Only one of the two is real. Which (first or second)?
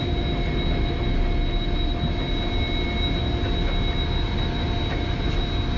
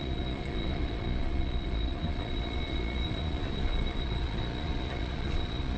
first